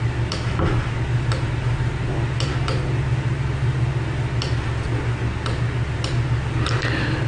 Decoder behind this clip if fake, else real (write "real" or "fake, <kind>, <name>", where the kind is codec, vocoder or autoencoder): real